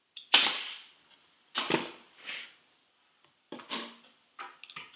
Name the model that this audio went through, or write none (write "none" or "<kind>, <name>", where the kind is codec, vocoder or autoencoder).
none